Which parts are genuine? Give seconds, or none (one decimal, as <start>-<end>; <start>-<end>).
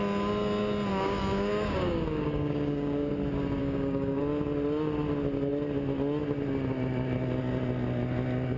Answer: 0.0-0.9; 3.1-3.6; 4.2-8.6